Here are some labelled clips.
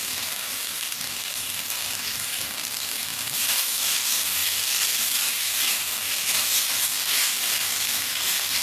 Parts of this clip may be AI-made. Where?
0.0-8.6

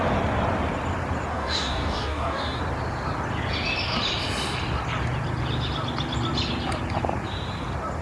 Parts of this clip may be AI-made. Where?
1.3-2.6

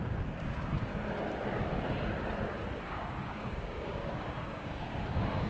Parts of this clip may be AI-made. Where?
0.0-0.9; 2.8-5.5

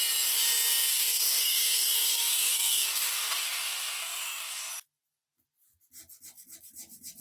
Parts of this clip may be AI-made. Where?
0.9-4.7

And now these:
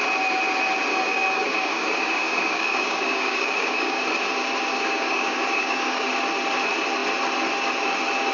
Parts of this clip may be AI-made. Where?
0.9-4.0; 4.7-6.1

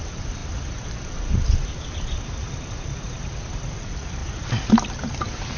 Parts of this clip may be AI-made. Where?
none

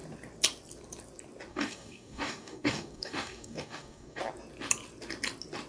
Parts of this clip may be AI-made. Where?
1.5-4.2